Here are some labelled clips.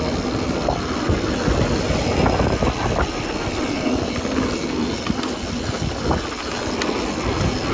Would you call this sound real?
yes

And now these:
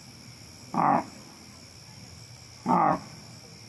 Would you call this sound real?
yes